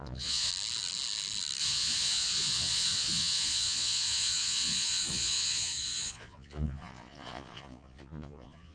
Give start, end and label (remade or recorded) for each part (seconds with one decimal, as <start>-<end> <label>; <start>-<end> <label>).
0.0-0.5 remade; 0.5-1.6 recorded; 1.6-8.7 remade